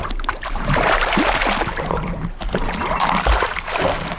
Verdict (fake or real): fake